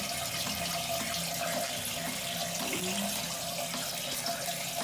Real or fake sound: real